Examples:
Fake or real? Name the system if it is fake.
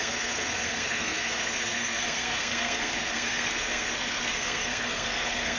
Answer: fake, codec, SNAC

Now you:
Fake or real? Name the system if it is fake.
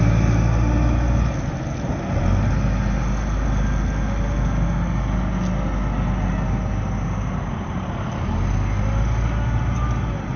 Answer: real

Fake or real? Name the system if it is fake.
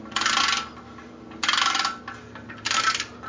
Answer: real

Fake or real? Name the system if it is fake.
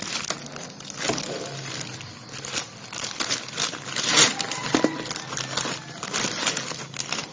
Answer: real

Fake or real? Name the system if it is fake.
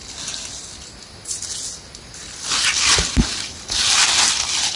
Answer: real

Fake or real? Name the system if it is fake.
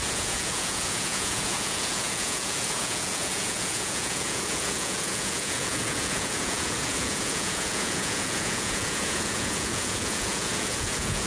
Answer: fake, vocoder, Vocos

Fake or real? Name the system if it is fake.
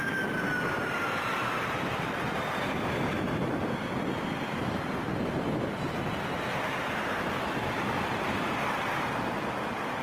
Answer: real